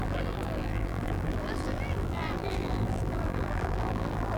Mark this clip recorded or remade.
remade